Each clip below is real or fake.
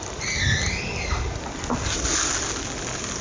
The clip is real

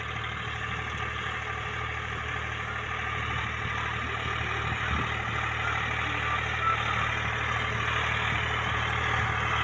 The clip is real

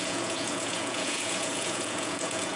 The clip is fake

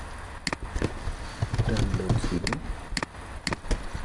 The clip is real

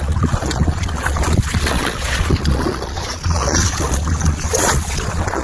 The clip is fake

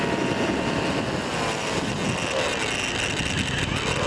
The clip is real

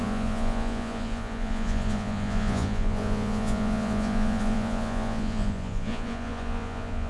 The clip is fake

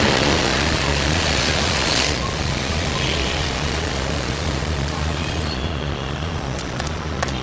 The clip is fake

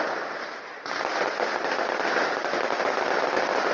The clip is real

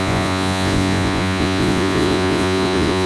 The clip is fake